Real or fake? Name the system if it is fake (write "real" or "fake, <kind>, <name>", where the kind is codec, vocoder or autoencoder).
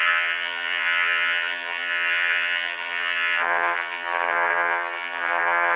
fake, vocoder, HiFi-GAN